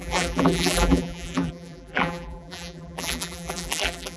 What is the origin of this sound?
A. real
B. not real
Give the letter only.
B